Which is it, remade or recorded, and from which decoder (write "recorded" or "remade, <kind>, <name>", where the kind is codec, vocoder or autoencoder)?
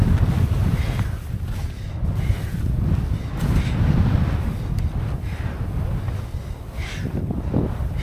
recorded